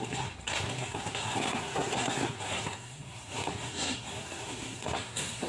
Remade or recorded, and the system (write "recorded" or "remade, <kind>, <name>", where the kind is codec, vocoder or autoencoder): remade, codec, SNAC